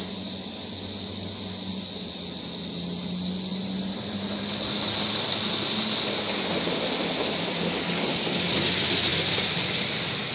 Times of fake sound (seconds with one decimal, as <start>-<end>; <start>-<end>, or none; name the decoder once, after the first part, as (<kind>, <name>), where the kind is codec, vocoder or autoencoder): none